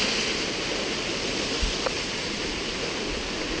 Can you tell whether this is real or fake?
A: real